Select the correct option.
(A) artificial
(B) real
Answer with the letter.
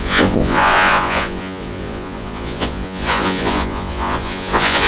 A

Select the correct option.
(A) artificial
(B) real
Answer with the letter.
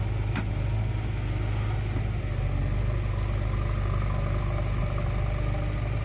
B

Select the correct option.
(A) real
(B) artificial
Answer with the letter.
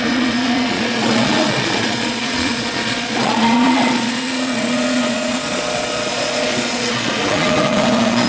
B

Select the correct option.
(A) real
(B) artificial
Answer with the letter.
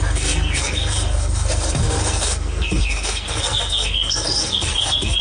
B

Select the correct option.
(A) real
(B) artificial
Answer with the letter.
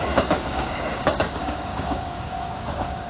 B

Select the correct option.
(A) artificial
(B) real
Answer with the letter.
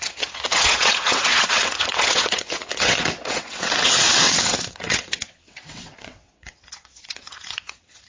A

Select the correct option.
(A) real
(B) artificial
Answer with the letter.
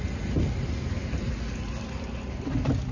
A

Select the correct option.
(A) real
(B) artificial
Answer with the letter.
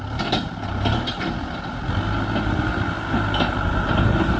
A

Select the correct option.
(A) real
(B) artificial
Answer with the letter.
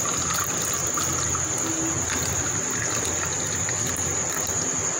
A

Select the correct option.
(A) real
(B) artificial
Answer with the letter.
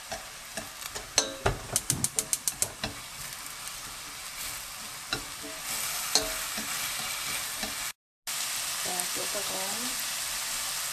A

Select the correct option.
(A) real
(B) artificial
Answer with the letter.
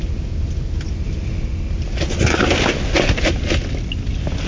A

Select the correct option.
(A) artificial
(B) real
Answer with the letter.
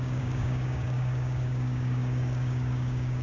A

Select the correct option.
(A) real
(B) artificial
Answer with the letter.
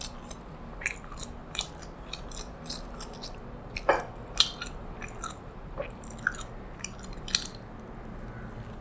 A